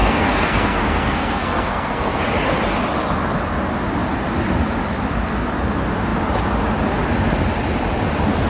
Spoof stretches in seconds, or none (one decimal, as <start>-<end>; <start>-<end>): 0.0-2.2